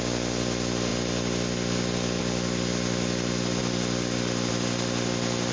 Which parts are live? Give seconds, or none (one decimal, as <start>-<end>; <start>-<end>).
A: 0.0-5.5